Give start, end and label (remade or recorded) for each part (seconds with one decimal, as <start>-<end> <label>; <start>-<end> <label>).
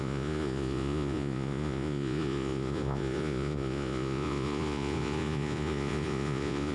0.0-6.7 remade